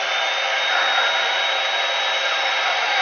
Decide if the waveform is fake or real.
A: real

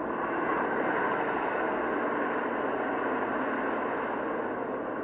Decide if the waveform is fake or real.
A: real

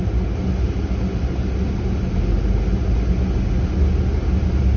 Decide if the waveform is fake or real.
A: real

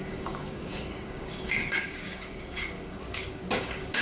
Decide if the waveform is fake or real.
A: fake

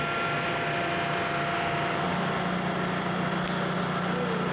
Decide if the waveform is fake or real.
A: real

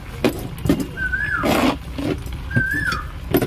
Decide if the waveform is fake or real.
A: real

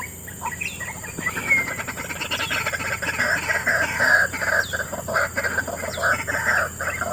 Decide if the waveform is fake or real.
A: real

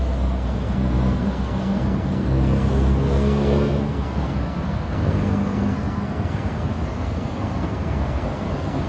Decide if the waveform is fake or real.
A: fake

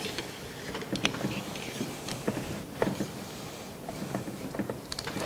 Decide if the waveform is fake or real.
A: fake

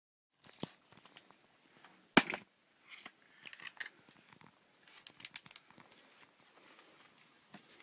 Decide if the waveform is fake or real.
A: real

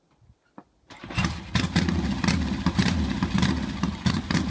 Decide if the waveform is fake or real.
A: real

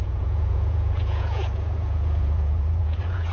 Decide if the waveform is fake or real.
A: fake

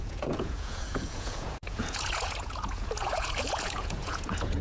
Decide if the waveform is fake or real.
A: fake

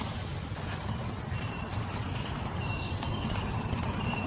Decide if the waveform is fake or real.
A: real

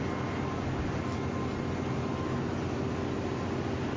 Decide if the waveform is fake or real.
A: real